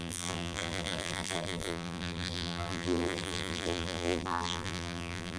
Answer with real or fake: fake